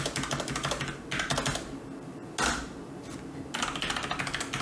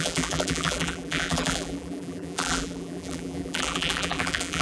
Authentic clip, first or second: first